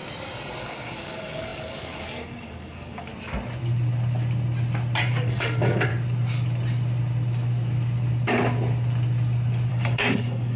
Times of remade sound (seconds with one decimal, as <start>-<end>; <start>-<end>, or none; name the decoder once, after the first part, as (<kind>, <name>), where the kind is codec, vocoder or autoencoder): 0.6-3.1 (codec, DAC); 5.1-5.9; 9.7-10.6